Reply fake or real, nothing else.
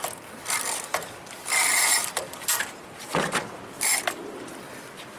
real